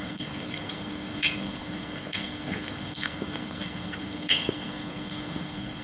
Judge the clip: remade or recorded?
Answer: remade